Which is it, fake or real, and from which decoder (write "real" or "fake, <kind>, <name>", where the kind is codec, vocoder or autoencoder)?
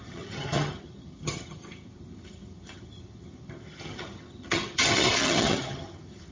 fake, vocoder, HiFi-GAN